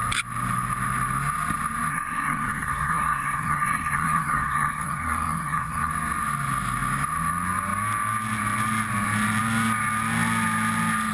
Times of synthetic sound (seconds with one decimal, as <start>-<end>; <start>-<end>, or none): 1.9-5.9